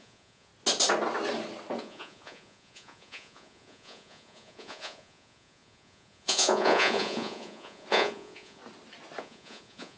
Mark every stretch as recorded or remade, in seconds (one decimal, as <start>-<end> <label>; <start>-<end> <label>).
0.0-0.5 remade; 0.5-1.8 recorded; 1.8-8.6 remade; 8.6-9.2 recorded; 9.2-10.0 remade